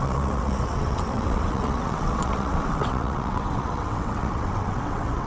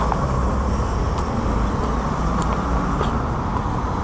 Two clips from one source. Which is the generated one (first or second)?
first